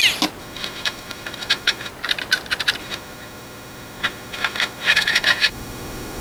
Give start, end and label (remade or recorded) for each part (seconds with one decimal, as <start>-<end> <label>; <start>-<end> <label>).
0.0-0.4 recorded; 0.4-1.9 remade; 1.9-2.8 recorded; 2.8-6.2 remade